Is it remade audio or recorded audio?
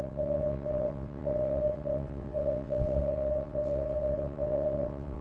remade